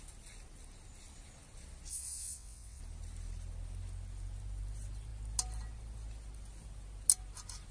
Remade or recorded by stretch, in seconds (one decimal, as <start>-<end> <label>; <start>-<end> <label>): 0.0-1.9 recorded; 1.9-2.8 remade; 2.8-7.7 recorded